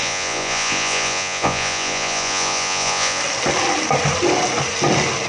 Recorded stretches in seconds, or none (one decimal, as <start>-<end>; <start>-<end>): 3.2-5.3